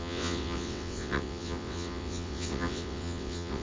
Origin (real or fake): fake